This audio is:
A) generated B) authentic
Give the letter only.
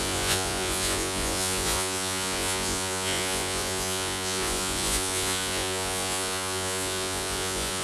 A